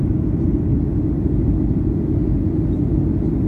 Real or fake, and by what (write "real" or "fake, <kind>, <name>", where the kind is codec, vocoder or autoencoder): real